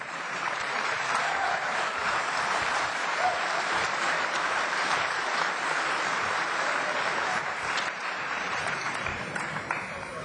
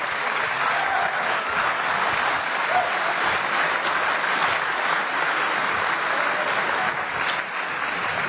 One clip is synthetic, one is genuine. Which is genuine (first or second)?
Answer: second